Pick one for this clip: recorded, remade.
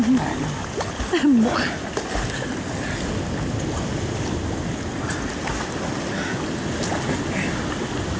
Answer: recorded